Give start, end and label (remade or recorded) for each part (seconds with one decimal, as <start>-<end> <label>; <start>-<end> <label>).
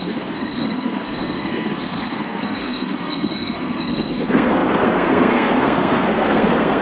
0.0-6.8 remade